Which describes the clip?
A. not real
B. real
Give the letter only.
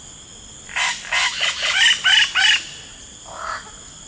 B